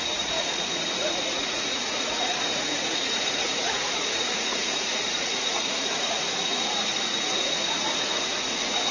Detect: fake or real fake